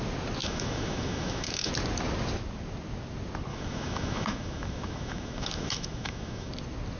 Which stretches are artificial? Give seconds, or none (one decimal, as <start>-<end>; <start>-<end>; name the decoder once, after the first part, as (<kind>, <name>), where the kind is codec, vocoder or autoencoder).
0.4-1.7 (autoencoder, DAC-VAE); 3.5-6.5